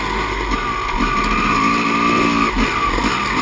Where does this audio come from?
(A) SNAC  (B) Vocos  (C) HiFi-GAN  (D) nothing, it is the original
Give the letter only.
D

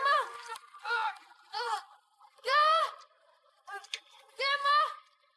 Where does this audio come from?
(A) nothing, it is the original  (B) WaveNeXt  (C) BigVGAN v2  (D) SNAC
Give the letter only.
C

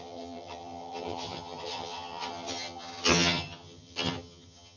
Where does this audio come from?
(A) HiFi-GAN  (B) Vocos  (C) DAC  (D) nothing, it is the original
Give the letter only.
A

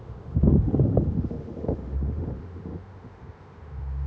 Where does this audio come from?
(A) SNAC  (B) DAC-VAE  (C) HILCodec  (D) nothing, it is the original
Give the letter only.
B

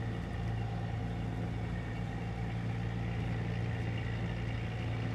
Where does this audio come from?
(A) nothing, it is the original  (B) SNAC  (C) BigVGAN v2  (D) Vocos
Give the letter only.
A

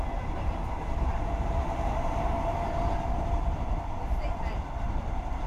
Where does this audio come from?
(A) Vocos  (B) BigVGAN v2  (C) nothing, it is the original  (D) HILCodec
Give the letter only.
B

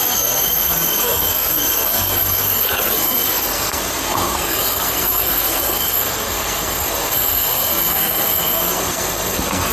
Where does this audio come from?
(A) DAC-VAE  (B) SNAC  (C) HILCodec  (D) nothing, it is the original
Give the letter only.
B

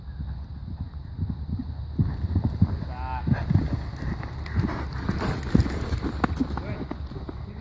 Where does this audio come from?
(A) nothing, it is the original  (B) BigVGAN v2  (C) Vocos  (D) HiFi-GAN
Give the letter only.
A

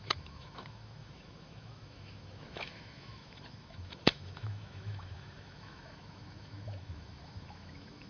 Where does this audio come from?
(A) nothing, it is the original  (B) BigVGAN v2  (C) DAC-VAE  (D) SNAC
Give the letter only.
C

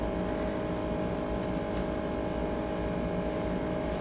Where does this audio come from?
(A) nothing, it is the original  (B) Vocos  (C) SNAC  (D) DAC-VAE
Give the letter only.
A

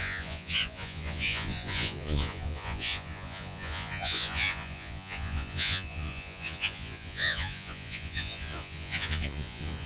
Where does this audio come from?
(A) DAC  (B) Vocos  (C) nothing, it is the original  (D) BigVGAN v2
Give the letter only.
B